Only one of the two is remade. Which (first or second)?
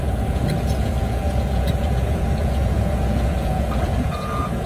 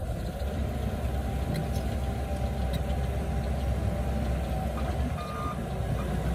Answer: first